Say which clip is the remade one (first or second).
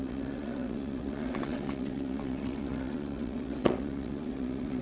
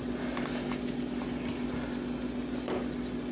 first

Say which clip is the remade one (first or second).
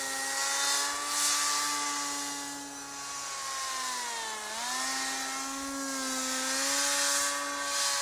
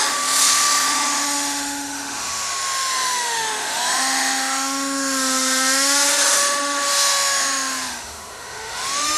second